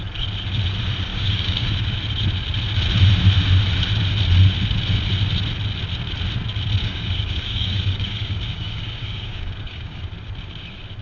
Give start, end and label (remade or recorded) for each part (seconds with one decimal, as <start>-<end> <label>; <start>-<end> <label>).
0.0-1.1 recorded; 1.1-1.9 remade; 1.9-6.8 recorded; 6.8-10.0 remade; 10.0-11.0 recorded